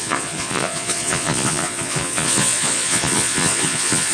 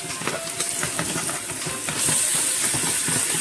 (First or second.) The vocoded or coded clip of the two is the first